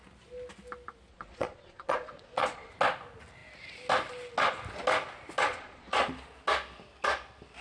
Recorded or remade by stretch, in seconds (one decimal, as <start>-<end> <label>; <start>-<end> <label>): 0.0-1.1 recorded; 1.1-2.7 remade; 2.7-5.5 recorded; 5.5-6.1 remade; 6.1-7.6 recorded